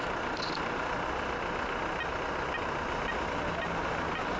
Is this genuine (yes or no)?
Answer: yes